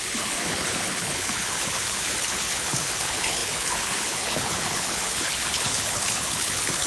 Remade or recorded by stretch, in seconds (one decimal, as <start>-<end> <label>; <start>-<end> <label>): 0.0-6.9 remade